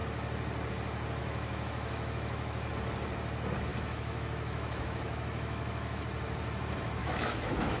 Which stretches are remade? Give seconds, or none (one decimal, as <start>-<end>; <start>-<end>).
1.2-2.7; 3.7-6.0; 7.0-7.8